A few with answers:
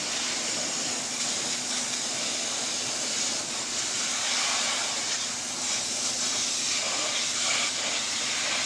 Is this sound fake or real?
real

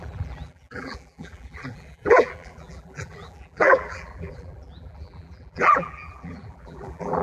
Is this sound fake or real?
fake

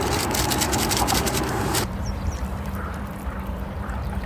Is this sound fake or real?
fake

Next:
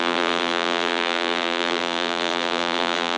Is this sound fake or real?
fake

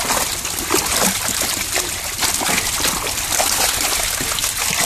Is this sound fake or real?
real